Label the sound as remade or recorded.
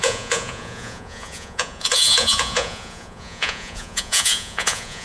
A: remade